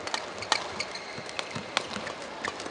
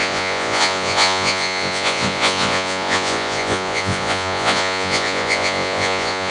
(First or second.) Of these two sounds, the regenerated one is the second